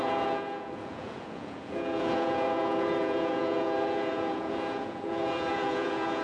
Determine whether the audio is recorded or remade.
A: remade